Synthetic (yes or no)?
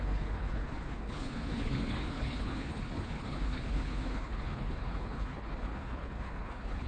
yes